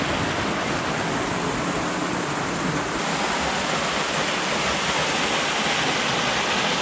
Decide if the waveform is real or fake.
real